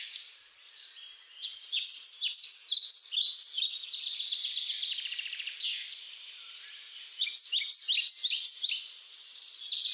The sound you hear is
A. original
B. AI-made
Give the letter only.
A